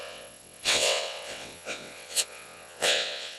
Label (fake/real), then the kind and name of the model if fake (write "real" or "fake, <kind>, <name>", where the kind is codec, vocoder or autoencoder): fake, vocoder, WaveNeXt